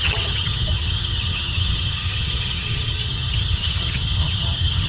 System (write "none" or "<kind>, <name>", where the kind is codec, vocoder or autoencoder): vocoder, HiFi-GAN